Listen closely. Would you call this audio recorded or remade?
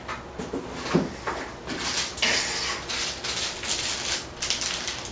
recorded